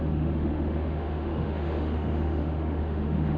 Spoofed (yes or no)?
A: yes